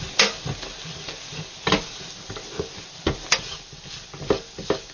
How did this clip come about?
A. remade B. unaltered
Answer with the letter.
B